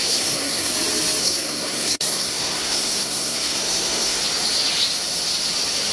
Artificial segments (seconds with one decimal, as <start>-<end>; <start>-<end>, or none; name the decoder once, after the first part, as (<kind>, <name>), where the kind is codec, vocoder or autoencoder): 0.0-0.7 (codec, SNAC); 1.2-4.2